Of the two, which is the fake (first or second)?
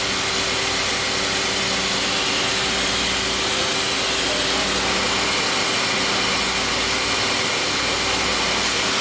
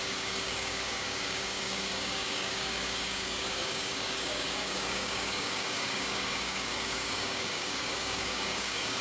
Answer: second